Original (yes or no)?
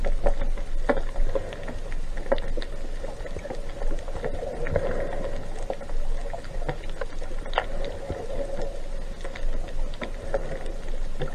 yes